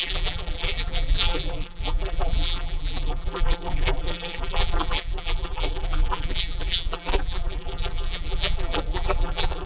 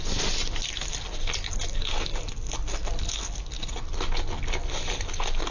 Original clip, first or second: second